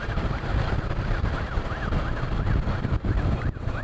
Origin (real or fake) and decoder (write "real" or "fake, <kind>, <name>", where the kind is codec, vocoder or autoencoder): real